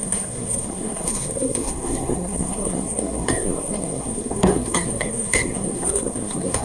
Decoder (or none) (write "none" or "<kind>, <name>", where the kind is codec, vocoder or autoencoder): codec, SNAC